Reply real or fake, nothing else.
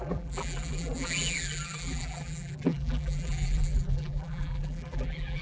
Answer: fake